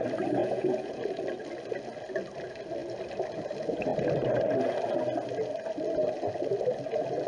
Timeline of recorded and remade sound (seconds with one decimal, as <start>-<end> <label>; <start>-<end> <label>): 0.0-0.4 recorded; 0.4-1.0 remade; 1.0-7.3 recorded

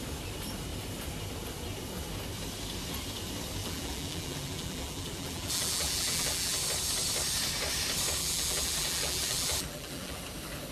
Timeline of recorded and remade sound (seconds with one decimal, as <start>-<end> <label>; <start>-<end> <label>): 0.0-3.6 recorded; 3.6-6.6 remade; 6.6-8.2 recorded; 8.2-10.2 remade; 10.2-10.7 recorded

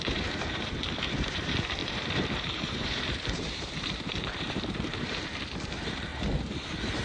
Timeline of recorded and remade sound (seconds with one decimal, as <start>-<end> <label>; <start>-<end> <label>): 0.0-6.1 remade; 6.1-7.0 recorded

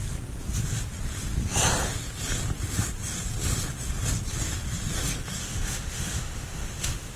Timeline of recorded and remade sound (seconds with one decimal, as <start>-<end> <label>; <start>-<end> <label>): 0.0-5.4 recorded; 5.4-7.2 remade

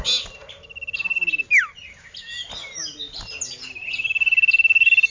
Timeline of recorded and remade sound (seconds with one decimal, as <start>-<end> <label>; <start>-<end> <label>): 0.0-5.1 recorded